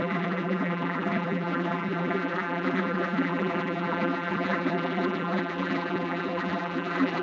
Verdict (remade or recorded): remade